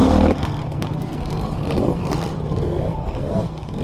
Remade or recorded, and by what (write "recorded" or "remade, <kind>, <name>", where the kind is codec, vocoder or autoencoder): remade, codec, SNAC